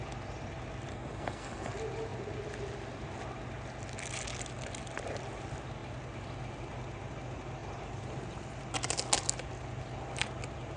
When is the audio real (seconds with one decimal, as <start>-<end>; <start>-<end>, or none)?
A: 0.0-0.9; 1.7-10.8